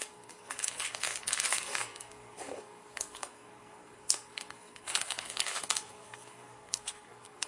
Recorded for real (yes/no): no